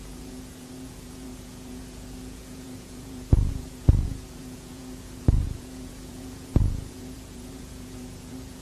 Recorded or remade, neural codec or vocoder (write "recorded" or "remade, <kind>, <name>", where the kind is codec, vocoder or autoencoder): remade, vocoder, Vocos